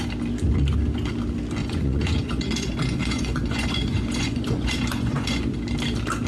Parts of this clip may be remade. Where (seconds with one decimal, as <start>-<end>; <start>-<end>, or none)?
1.6-5.4

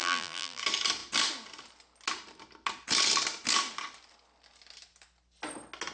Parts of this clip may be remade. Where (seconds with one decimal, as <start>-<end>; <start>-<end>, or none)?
0.0-0.6

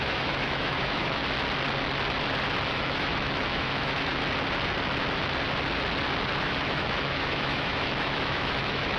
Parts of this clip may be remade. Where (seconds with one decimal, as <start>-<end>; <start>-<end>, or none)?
0.0-1.2; 2.7-4.1; 6.4-9.0

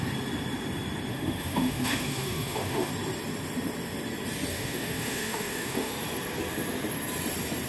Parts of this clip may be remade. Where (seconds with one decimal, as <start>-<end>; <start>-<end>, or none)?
1.1-2.9; 4.5-5.9

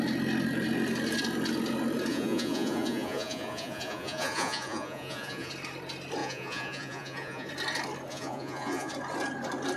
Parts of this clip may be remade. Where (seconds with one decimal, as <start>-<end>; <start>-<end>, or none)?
2.1-5.5; 6.2-7.5; 8.1-8.9

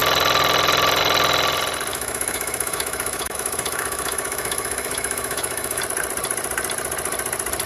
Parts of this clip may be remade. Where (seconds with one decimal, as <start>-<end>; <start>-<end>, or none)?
1.9-5.8

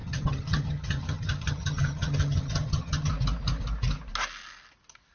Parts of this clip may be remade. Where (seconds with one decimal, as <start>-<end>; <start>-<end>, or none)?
0.0-3.1